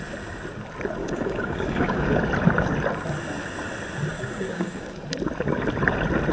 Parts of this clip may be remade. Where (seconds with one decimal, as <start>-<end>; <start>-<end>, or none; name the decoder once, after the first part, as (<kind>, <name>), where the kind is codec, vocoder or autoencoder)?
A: 1.0-2.2 (codec, DAC); 4.1-4.9